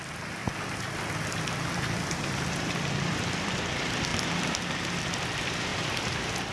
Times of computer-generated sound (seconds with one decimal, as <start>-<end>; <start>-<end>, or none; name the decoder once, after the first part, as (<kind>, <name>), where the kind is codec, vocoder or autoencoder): 0.0-0.4 (vocoder, BigVGAN v2); 1.3-6.5